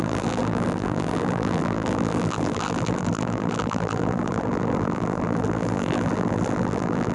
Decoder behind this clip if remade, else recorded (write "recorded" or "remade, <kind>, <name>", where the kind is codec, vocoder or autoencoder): remade, vocoder, BigVGAN v2